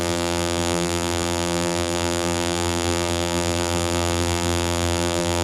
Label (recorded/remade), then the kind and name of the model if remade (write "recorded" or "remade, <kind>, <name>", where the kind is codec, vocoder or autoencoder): remade, vocoder, BigVGAN v2